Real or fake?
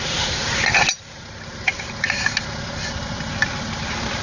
real